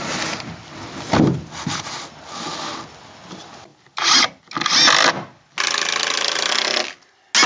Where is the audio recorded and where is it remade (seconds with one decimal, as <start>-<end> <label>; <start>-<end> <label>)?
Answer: 0.0-7.5 recorded